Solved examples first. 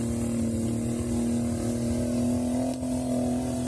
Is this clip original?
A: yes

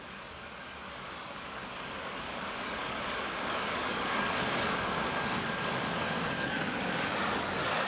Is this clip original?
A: no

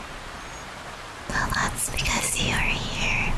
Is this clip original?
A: yes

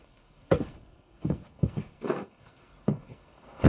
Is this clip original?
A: no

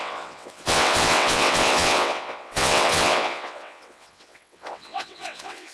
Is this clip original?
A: no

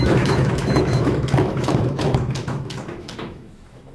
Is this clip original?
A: no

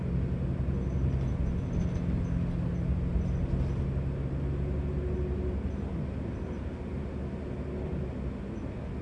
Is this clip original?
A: yes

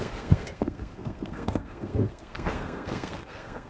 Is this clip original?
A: no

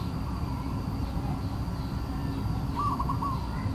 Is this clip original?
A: yes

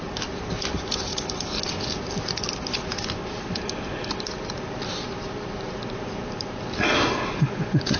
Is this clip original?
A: yes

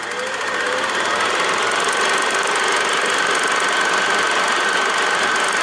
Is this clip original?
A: yes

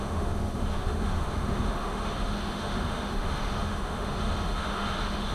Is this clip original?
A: no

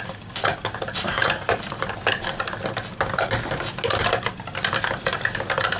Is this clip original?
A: yes